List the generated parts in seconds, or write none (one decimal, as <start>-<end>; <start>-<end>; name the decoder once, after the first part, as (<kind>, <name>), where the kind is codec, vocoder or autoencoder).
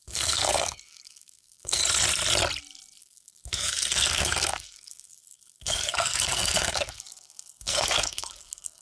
0.0-1.8 (codec, SNAC); 3.0-8.8